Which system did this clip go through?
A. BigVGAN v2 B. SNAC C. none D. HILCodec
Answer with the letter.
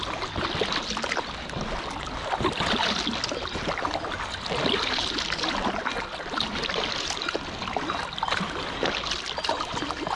C